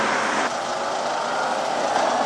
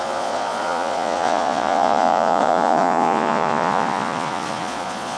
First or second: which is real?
first